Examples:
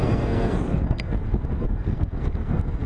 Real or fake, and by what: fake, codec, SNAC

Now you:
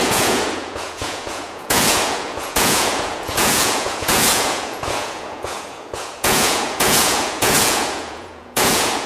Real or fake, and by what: fake, vocoder, Vocos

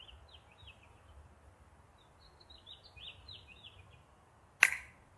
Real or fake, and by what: real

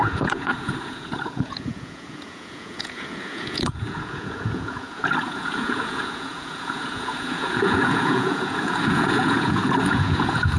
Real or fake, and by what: fake, vocoder, Vocos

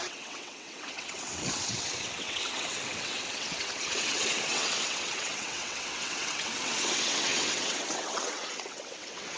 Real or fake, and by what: fake, vocoder, WaveNeXt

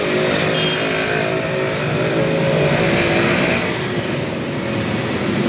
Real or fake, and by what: real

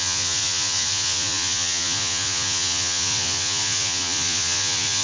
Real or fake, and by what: fake, vocoder, Vocos